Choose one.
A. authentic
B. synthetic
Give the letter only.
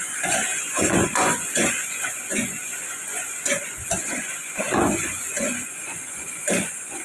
B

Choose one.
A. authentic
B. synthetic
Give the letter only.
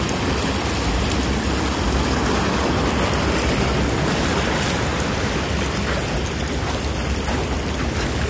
A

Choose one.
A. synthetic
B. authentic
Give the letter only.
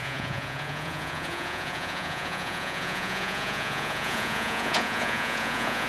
A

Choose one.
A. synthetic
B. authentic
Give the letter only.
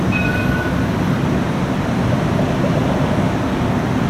B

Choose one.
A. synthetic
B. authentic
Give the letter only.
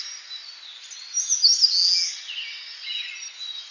B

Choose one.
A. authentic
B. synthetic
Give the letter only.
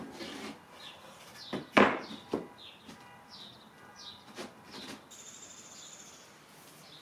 A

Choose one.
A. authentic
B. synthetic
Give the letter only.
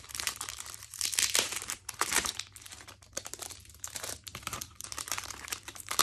B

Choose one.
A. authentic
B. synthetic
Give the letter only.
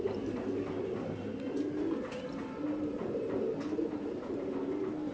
A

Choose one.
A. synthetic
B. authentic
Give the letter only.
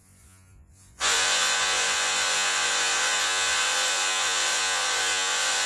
A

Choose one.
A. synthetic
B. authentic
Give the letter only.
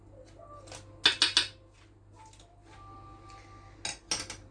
B